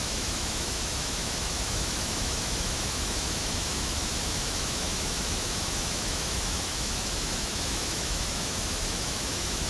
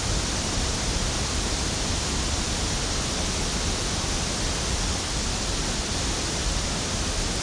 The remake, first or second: first